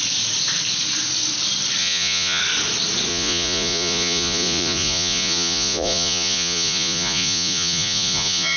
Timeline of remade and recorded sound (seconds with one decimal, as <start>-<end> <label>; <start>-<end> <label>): 0.0-1.8 recorded; 1.8-2.4 remade; 2.4-3.1 recorded; 3.1-8.6 remade